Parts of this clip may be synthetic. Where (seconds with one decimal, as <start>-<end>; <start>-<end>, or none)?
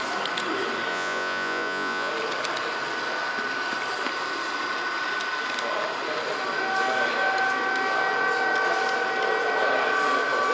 0.9-2.1